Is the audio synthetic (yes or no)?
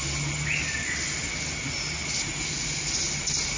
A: no